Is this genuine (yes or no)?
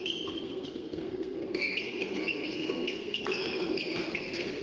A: no